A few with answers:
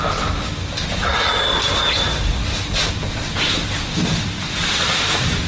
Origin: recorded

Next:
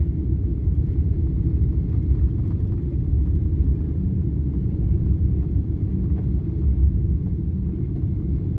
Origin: recorded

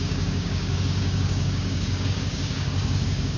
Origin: remade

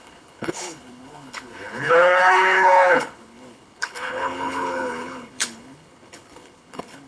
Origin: remade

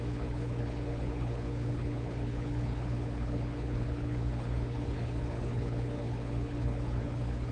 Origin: remade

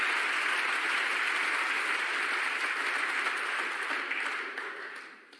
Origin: recorded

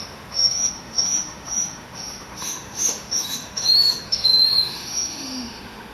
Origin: remade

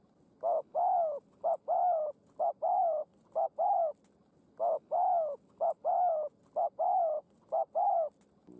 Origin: recorded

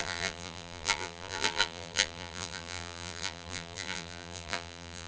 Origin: remade